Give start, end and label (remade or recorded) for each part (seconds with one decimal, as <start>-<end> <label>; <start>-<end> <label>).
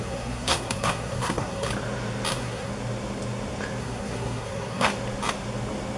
0.0-1.7 remade; 1.7-2.3 recorded; 2.3-2.7 remade; 2.7-3.8 recorded; 3.8-4.9 remade; 4.9-6.0 recorded